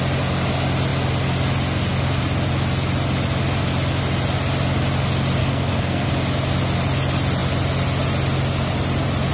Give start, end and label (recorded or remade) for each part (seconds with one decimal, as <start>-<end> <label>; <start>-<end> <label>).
0.0-5.4 recorded; 5.4-6.1 remade; 6.1-9.3 recorded